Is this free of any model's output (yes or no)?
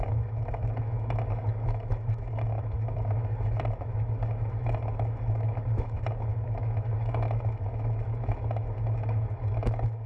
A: no